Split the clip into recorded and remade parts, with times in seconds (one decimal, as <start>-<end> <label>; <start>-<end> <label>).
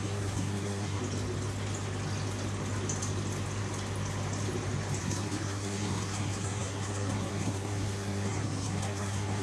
0.0-1.0 remade; 1.0-5.0 recorded; 5.0-9.4 remade